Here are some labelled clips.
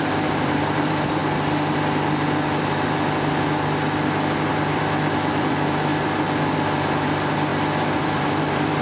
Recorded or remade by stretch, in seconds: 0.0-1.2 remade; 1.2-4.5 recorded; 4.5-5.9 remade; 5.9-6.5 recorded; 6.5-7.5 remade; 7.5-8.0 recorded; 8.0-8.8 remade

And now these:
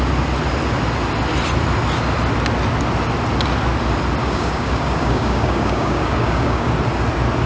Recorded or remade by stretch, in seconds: 0.0-4.2 recorded; 4.2-6.7 remade; 6.7-7.5 recorded

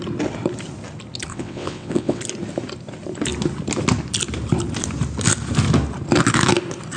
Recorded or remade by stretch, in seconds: 0.0-1.3 recorded; 1.3-2.2 remade; 2.2-7.0 recorded